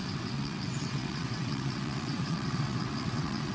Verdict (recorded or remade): remade